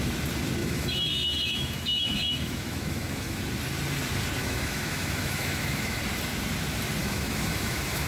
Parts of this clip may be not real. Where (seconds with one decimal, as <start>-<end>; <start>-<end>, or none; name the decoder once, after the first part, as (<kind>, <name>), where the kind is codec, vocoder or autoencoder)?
0.6-3.4 (autoencoder, DAC-VAE); 4.4-6.0; 7.0-8.1